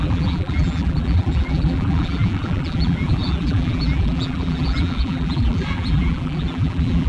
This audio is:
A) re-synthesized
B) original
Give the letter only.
A